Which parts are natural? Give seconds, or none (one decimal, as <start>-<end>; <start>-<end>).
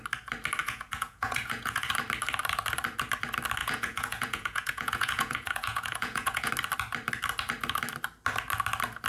0.0-0.6; 1.9-3.6; 6.5-9.1